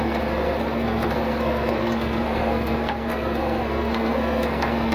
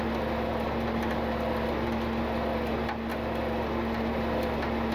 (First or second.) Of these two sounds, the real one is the second